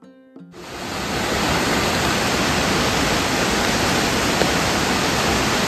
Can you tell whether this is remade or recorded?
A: recorded